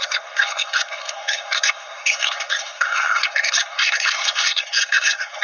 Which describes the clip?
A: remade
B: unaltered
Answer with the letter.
A